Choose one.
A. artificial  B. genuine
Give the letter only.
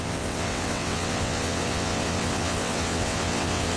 A